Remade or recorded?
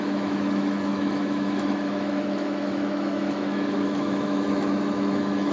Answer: remade